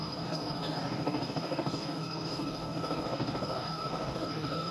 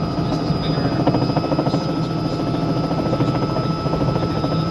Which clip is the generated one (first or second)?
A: first